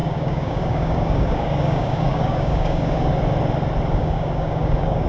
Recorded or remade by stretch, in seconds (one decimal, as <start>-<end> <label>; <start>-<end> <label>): 0.0-3.1 remade; 3.1-4.0 recorded; 4.0-5.1 remade

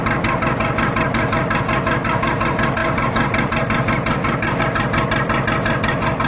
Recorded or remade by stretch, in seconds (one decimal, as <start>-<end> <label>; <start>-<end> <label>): 0.0-6.3 recorded

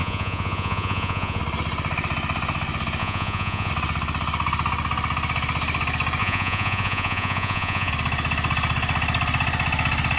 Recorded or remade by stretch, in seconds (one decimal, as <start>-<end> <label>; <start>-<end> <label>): 0.0-1.4 remade; 1.4-3.0 recorded; 3.0-3.7 remade; 3.7-6.2 recorded; 6.2-7.9 remade; 7.9-10.2 recorded

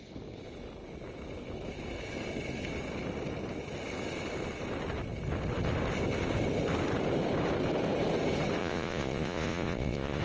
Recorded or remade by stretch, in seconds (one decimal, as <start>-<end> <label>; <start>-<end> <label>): 0.0-8.6 recorded; 8.6-10.2 remade